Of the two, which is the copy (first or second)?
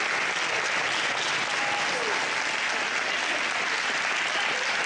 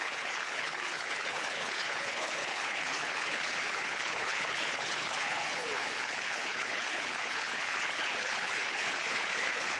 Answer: second